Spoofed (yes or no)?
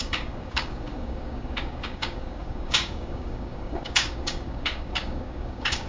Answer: yes